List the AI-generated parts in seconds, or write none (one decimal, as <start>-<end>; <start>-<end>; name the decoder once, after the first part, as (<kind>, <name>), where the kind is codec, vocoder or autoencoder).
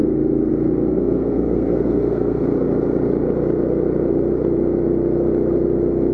0.9-2.4 (codec, SNAC)